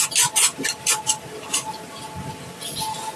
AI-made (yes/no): no